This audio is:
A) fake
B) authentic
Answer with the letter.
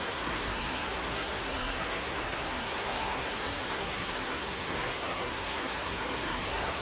A